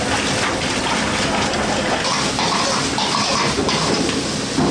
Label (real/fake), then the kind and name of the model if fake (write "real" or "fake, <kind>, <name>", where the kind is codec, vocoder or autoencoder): real